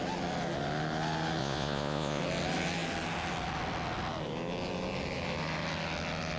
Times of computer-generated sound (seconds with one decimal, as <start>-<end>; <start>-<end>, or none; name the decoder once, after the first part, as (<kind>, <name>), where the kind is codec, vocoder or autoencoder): 1.4-2.2 (vocoder, Vocos)